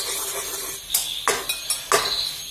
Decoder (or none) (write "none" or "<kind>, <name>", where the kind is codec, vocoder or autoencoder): none